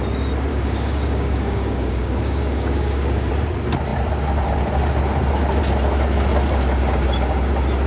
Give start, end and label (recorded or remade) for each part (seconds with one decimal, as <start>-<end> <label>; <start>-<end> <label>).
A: 0.0-0.5 recorded; 0.5-3.3 remade; 3.3-7.9 recorded